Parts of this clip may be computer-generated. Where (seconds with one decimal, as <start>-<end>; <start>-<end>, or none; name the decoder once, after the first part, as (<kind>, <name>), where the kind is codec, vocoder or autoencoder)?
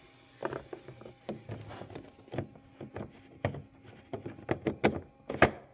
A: none